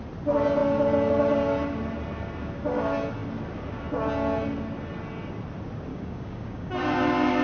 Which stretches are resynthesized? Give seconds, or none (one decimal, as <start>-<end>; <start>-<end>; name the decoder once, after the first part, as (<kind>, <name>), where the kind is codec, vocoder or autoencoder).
5.9-6.7 (codec, DAC)